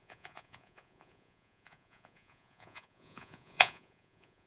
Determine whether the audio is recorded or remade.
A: remade